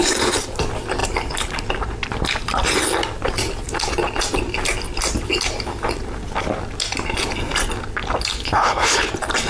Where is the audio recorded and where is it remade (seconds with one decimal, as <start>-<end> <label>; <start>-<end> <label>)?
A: 0.0-8.3 recorded; 8.3-9.1 remade; 9.1-9.5 recorded